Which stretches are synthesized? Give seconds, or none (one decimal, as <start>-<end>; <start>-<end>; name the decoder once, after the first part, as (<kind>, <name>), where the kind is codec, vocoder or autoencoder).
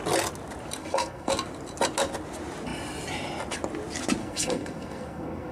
0.8-1.3 (codec, SNAC); 4.2-5.5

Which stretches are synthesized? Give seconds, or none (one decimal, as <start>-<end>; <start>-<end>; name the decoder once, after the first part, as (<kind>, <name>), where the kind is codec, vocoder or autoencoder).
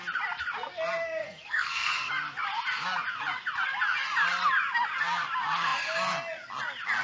1.2-2.1 (codec, SNAC)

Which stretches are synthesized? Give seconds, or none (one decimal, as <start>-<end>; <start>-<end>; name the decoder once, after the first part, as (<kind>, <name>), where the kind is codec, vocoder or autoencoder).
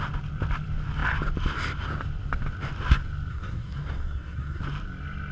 3.3-4.6 (codec, SNAC)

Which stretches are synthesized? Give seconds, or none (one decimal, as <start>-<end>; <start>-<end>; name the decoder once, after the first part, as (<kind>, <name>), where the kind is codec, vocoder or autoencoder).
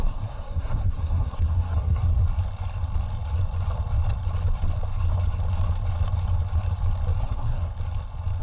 0.0-2.2 (codec, SNAC); 7.2-7.7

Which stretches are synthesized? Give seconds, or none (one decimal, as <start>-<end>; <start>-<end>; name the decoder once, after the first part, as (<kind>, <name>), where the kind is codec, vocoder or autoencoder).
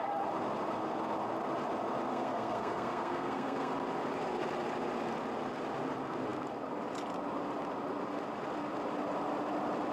2.1-3.7 (codec, SNAC)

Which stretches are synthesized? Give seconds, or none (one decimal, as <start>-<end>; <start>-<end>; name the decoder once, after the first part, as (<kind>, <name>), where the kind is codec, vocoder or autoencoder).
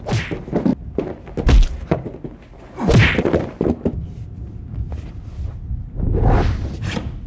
none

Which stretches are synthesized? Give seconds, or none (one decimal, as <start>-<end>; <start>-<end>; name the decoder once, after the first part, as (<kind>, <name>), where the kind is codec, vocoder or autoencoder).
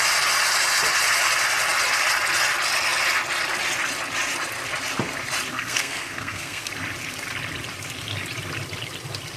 5.5-6.7 (codec, SNAC)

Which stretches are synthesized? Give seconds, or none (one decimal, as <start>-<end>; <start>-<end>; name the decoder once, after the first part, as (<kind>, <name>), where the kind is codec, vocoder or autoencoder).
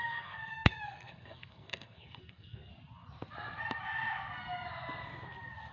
0.0-2.7 (codec, SNAC)